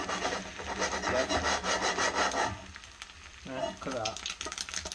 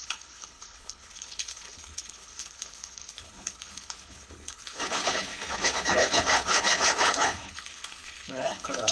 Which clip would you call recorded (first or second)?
first